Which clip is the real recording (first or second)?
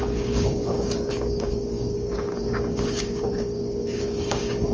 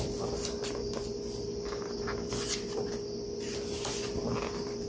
second